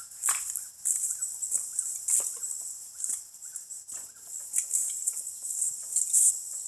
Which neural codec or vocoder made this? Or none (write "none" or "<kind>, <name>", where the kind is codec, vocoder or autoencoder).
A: none